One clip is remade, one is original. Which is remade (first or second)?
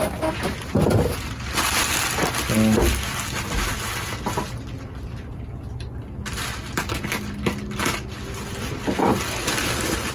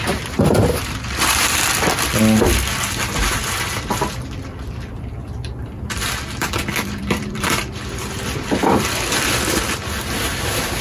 second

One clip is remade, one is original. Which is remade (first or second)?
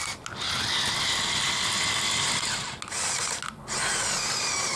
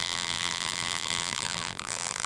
second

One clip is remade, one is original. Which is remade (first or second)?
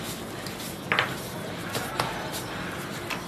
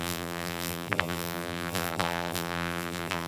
second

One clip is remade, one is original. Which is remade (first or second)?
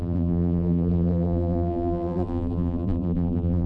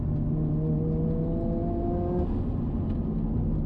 first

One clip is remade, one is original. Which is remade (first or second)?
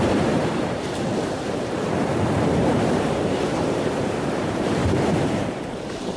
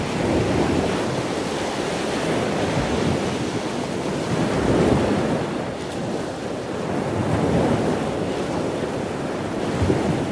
first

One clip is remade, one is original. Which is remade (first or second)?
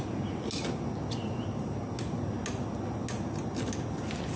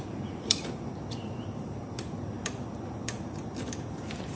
second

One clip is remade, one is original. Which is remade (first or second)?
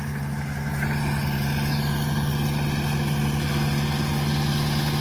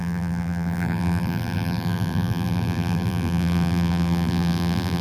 second